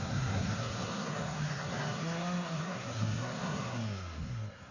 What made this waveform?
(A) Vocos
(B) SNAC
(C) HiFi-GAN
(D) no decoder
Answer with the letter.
B